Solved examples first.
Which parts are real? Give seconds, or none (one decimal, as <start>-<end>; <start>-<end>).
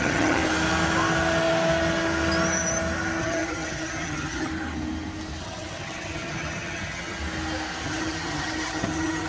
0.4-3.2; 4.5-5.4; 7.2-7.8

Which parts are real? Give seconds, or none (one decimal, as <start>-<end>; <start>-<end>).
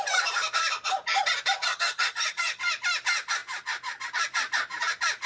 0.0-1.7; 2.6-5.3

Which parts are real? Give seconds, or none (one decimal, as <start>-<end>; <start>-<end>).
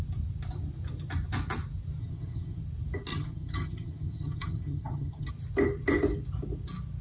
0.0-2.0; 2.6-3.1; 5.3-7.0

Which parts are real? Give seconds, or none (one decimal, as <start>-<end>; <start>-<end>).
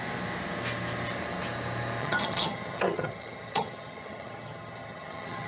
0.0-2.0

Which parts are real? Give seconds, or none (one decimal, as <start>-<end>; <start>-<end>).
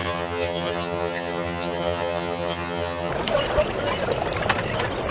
3.1-5.1